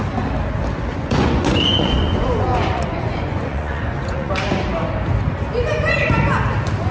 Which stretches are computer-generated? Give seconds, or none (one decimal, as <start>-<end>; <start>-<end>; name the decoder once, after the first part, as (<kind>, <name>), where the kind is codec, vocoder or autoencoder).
0.9-4.3 (vocoder, Vocos)